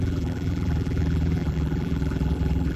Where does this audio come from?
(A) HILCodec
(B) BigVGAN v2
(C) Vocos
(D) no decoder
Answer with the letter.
B